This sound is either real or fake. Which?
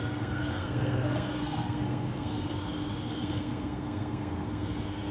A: fake